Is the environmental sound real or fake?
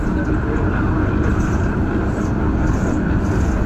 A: real